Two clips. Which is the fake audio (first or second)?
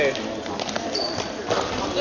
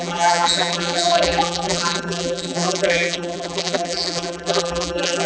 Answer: second